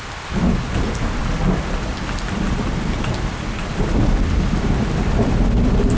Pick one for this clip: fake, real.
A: real